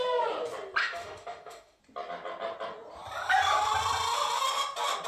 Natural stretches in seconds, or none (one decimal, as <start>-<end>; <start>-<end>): 0.0-0.8; 1.8-5.1